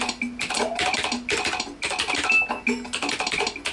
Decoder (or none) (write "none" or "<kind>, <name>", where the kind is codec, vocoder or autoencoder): none